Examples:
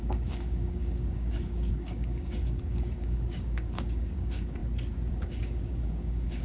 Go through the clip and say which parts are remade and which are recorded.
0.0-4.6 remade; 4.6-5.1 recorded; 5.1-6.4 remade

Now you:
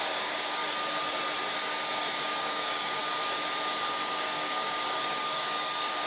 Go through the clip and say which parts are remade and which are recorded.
0.0-0.6 remade; 0.6-2.3 recorded; 2.3-3.0 remade; 3.0-3.8 recorded; 3.8-6.1 remade

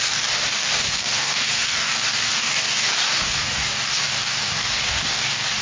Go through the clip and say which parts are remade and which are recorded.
0.0-5.6 remade

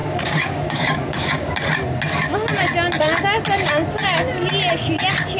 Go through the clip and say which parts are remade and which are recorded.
0.0-1.5 remade; 1.5-5.4 recorded

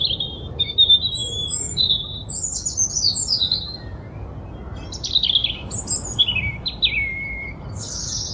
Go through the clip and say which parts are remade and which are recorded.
0.0-8.3 recorded

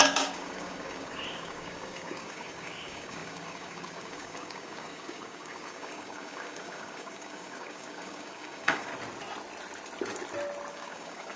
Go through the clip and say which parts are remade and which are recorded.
0.0-8.9 remade; 8.9-10.7 recorded; 10.7-11.4 remade